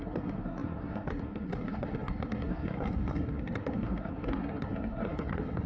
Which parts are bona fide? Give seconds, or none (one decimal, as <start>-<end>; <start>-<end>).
none

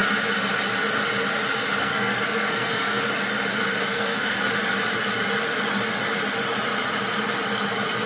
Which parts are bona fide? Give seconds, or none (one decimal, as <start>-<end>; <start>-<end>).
0.0-1.8; 3.0-3.7; 4.4-8.1

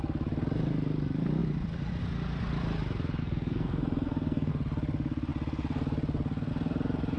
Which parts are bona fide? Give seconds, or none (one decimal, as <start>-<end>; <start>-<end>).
0.0-3.2; 4.5-7.2